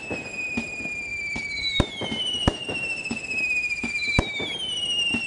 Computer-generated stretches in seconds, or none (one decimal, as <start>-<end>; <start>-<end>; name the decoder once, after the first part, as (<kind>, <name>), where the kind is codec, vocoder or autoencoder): 1.1-3.4 (vocoder, BigVGAN v2)

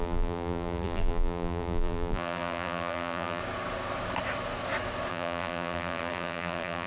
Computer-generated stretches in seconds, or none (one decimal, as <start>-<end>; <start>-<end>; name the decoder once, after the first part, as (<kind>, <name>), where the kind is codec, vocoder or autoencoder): 0.0-3.4 (vocoder, BigVGAN v2); 5.1-6.9